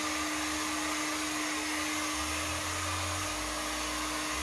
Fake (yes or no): no